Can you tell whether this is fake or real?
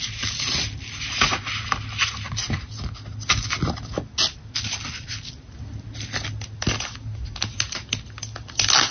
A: real